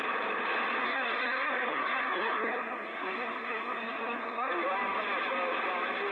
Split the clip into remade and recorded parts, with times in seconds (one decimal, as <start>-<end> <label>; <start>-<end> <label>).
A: 0.0-0.8 recorded; 0.8-4.5 remade; 4.5-6.1 recorded